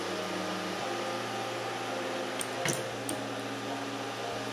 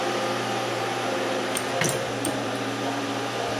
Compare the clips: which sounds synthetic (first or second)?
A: second